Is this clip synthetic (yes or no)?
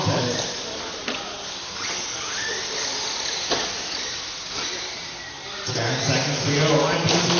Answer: no